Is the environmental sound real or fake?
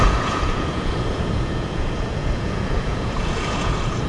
fake